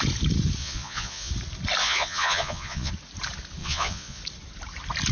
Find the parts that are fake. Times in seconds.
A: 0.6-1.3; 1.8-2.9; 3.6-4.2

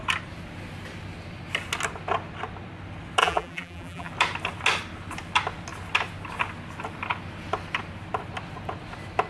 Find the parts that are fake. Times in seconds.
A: 3.2-4.1

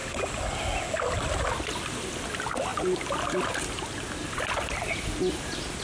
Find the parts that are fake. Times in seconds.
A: none

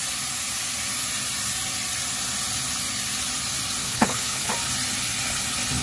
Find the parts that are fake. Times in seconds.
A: 3.8-4.5

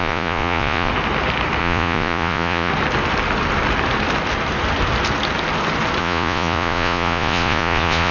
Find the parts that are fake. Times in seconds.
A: 0.0-0.9; 1.6-2.7; 6.0-8.1

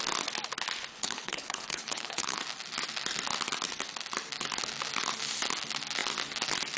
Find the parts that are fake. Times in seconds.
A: 0.9-2.4

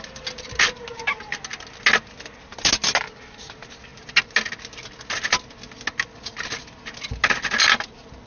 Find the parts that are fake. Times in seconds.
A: none

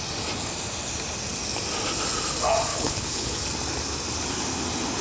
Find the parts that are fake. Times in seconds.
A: 2.7-3.4